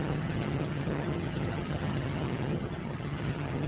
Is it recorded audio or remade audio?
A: remade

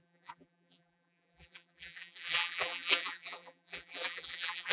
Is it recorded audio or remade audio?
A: remade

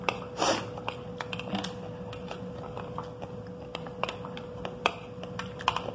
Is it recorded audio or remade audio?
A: recorded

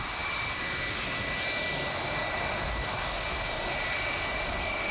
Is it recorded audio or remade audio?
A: recorded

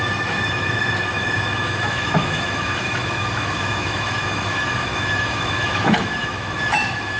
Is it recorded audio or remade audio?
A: remade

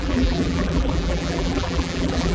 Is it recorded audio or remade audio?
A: remade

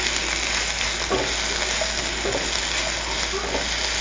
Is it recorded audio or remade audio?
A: recorded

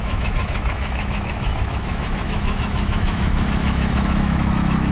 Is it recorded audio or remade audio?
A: remade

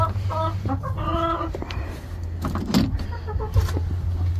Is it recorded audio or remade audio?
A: recorded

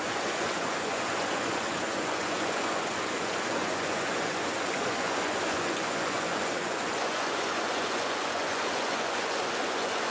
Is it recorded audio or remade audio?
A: remade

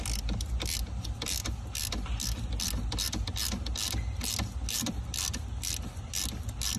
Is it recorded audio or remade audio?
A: recorded